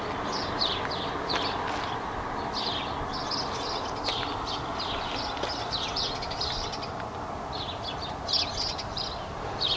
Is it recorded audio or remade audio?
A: recorded